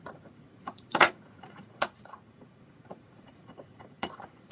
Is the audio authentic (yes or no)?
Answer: no